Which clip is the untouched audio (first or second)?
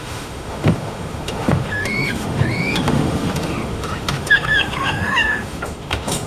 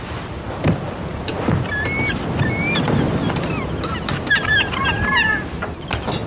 second